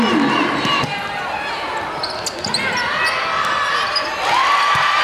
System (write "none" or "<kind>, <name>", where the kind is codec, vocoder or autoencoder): none